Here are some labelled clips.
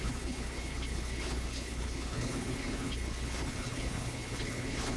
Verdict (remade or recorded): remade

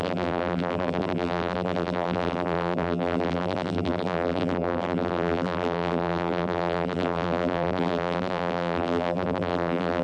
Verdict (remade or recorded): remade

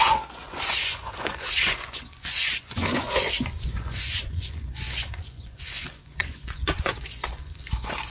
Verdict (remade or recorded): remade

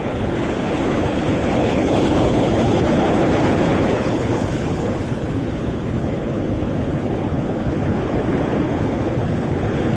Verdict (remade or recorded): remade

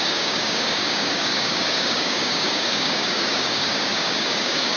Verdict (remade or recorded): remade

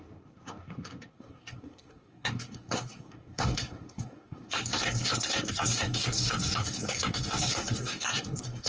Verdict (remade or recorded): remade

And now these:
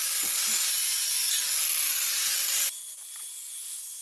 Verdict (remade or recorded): recorded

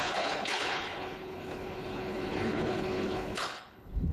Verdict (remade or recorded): remade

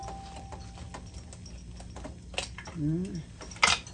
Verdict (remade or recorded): recorded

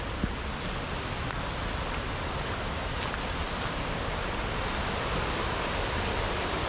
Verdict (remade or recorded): recorded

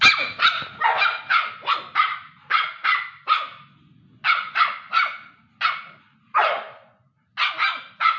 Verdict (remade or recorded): recorded